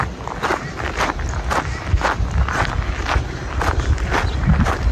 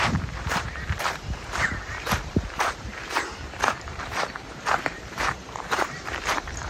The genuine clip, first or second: first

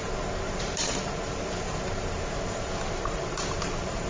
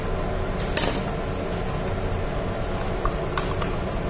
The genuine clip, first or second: second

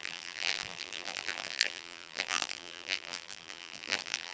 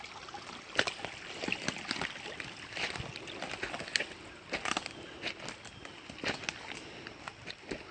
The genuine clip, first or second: second